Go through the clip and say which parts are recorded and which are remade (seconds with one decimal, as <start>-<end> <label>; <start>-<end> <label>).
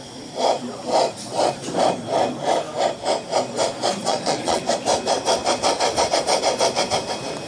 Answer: 0.0-4.0 recorded; 4.0-4.6 remade; 4.6-7.5 recorded